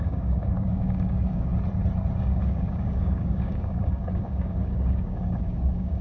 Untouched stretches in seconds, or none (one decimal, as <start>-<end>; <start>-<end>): 1.5-2.2